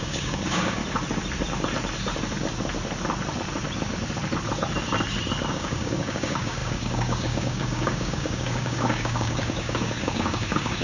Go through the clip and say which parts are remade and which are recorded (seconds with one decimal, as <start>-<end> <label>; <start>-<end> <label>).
0.0-0.8 remade; 0.8-5.5 recorded; 5.5-10.8 remade

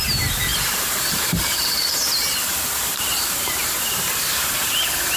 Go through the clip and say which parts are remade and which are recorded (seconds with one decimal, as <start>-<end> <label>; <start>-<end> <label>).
0.0-0.5 recorded; 0.5-2.1 remade; 2.1-2.5 recorded; 2.5-4.5 remade; 4.5-5.2 recorded